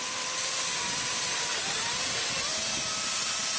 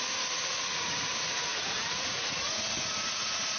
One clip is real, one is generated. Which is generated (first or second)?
second